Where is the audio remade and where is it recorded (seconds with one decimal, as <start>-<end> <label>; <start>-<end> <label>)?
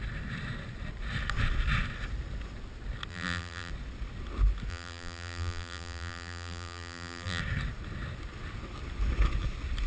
0.0-3.1 recorded; 3.1-3.7 remade; 3.7-4.7 recorded; 4.7-7.4 remade; 7.4-9.9 recorded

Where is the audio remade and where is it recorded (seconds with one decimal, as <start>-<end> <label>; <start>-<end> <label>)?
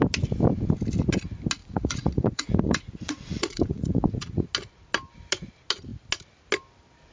0.0-1.6 recorded; 1.6-4.5 remade; 4.5-7.1 recorded